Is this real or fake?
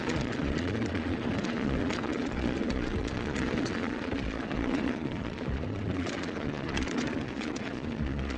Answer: fake